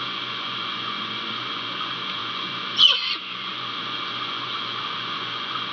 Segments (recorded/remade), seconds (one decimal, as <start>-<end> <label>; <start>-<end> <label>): 0.0-5.7 remade